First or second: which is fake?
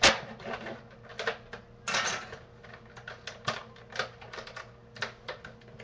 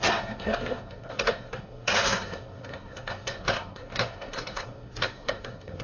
second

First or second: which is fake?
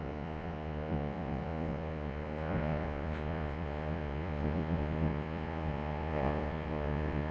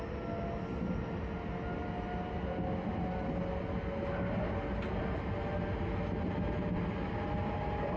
first